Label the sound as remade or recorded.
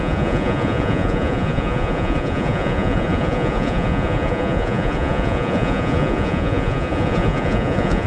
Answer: remade